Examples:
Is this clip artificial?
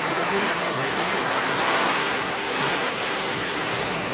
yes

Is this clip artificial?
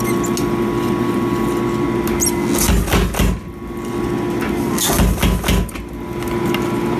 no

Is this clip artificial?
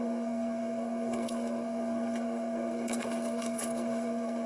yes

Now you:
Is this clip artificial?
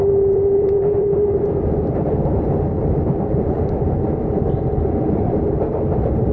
yes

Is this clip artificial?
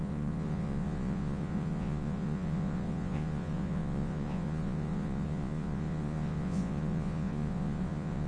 yes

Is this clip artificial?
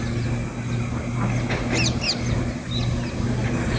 no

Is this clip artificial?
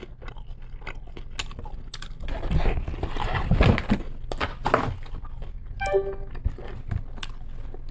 no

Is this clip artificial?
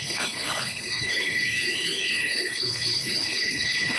yes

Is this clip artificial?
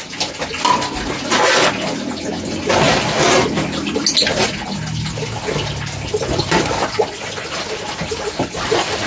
no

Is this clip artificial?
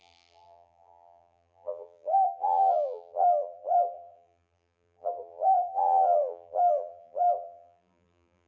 yes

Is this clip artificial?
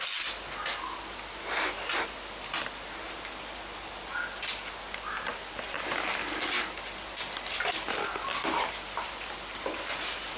no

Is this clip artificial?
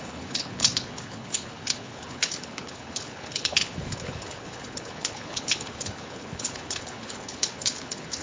yes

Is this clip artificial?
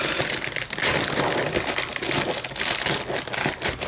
no